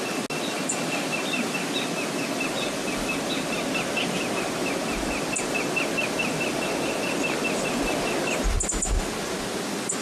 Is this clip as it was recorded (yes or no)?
yes